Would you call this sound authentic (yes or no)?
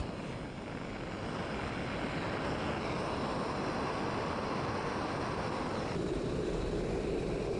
yes